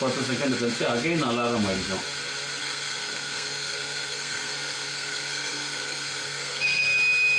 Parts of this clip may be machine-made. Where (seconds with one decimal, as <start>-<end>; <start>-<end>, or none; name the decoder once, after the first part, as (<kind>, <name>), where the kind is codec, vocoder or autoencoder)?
2.6-7.0 (codec, SNAC)

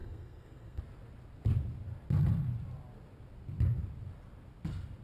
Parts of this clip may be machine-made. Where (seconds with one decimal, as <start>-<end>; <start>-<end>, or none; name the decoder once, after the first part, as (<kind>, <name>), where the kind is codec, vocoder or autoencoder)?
0.0-0.8 (codec, SNAC)

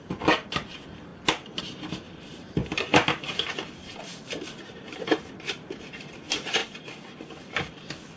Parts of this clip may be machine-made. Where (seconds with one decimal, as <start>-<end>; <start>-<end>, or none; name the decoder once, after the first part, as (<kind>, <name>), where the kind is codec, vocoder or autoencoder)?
0.0-1.1 (vocoder, BigVGAN v2); 1.6-2.6; 4.0-6.6

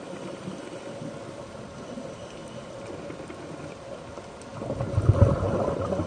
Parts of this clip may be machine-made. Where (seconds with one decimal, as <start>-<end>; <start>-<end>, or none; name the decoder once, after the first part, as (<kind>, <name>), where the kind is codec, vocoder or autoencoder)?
none

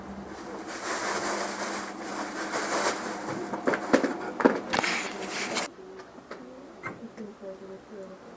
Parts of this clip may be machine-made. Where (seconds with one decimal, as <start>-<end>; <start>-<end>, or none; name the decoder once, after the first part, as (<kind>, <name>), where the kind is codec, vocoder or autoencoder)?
none

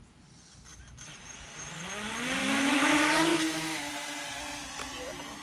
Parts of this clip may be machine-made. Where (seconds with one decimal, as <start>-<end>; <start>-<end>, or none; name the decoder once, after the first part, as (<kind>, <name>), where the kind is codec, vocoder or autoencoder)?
2.4-2.9 (autoencoder, DAC-VAE); 3.3-3.9

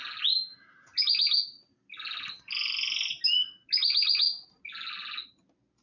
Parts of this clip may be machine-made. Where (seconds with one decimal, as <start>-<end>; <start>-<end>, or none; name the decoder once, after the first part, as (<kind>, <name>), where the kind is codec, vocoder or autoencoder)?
none

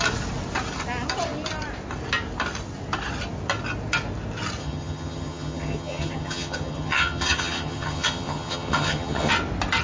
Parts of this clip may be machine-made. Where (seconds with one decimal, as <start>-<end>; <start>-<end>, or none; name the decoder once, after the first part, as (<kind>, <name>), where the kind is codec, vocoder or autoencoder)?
4.6-9.3 (vocoder, HiFi-GAN)